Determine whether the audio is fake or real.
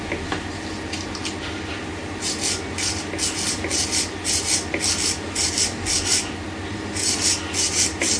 real